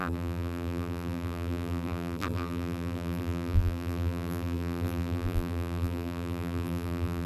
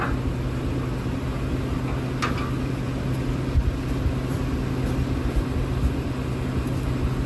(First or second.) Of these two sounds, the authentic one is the second